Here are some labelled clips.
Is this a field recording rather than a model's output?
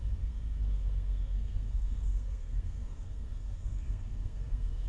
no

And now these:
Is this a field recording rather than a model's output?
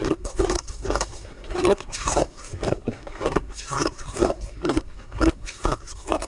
no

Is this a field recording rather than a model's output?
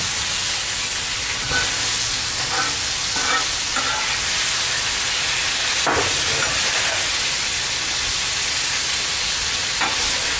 yes